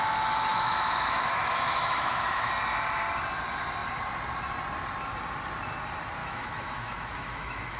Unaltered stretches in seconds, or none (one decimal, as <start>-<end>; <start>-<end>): 0.0-0.5; 2.5-6.2